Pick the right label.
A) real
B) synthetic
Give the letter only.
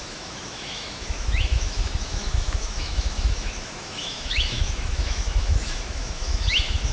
B